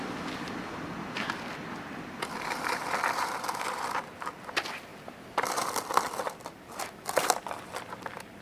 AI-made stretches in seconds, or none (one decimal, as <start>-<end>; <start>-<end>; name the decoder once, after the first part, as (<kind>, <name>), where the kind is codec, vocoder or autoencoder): none